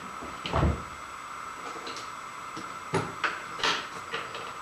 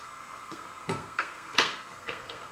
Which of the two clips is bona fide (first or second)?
first